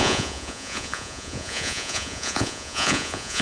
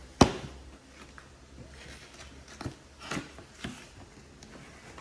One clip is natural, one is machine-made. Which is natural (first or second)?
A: second